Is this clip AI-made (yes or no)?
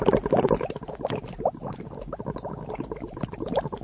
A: no